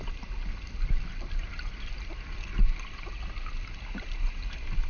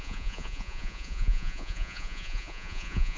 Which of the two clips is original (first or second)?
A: first